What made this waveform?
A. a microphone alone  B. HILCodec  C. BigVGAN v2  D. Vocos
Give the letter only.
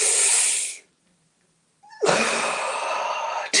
A